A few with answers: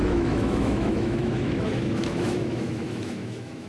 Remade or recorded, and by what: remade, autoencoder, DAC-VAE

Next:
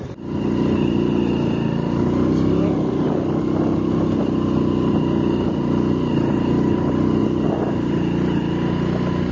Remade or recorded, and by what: recorded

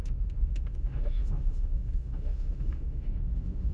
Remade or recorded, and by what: remade, autoencoder, DAC-VAE